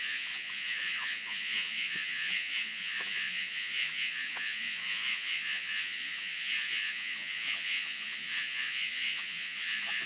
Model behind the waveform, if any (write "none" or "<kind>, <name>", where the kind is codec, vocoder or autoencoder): vocoder, Vocos